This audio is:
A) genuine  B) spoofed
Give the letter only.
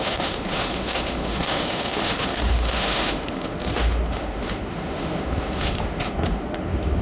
B